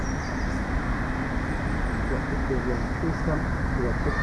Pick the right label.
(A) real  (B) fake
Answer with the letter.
A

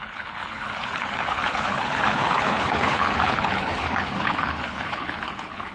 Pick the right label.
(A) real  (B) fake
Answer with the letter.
B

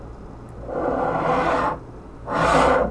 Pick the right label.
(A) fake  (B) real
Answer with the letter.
B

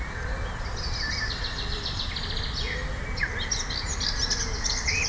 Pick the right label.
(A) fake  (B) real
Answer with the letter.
B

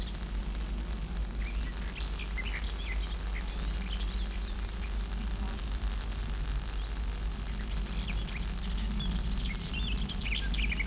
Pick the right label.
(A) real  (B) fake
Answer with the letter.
A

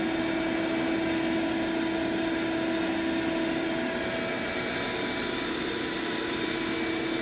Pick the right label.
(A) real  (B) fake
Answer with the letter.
A